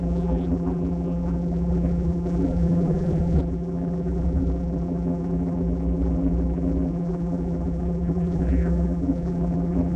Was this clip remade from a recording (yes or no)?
yes